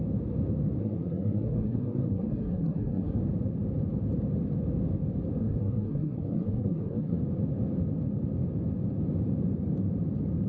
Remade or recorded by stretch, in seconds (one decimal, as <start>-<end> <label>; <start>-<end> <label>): 0.0-0.8 recorded; 0.8-3.2 remade; 3.2-5.4 recorded; 5.4-7.2 remade; 7.2-10.5 recorded

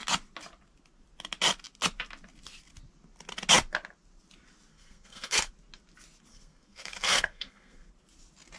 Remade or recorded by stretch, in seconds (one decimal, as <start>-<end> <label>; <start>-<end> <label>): 0.0-4.7 recorded; 4.7-5.5 remade; 5.5-6.3 recorded; 6.3-7.9 remade; 7.9-8.6 recorded

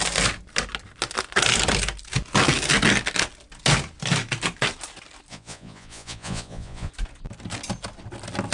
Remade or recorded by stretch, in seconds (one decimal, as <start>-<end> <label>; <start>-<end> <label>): 0.0-5.3 recorded; 5.3-6.9 remade; 6.9-8.5 recorded

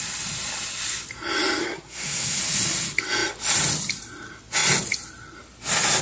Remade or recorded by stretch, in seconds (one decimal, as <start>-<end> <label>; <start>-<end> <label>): 0.0-1.6 recorded; 1.6-2.4 remade; 2.4-6.0 recorded

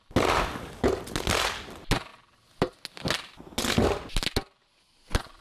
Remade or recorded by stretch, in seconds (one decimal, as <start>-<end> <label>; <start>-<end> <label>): 0.0-5.4 recorded